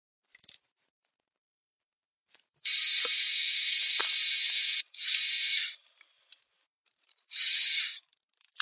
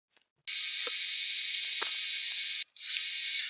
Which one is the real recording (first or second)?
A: second